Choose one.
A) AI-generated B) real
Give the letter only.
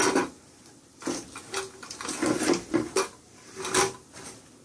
B